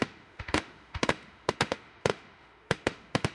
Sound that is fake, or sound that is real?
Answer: fake